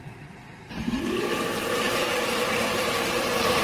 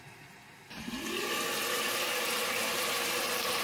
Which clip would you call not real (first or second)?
first